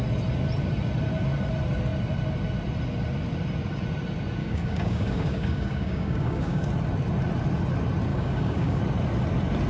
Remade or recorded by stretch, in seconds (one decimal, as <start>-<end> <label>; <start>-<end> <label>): 0.0-4.4 recorded; 4.4-6.7 remade; 6.7-8.1 recorded; 8.1-8.8 remade; 8.8-9.7 recorded